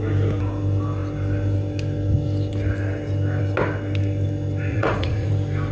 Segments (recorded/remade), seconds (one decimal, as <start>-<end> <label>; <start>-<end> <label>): 0.0-4.7 recorded; 4.7-5.3 remade; 5.3-5.7 recorded